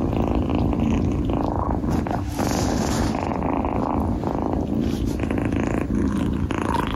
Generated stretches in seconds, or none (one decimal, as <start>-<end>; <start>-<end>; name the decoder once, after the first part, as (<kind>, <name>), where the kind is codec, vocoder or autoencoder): none